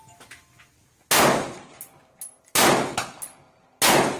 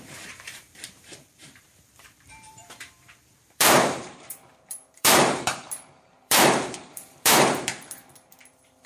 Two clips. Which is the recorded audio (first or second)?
first